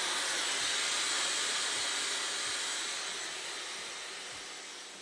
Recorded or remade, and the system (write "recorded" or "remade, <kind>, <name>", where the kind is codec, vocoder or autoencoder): recorded